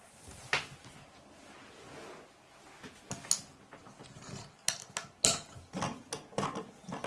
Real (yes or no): yes